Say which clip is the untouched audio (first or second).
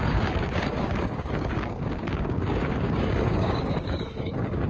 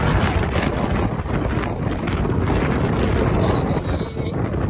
second